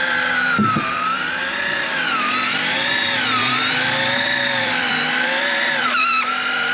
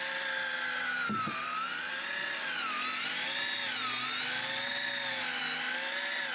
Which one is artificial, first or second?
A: first